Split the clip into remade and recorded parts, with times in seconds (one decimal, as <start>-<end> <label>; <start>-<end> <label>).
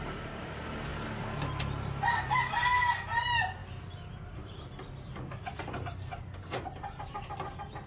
0.0-7.9 recorded